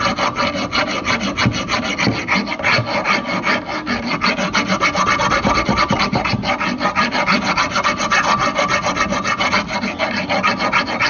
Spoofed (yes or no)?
no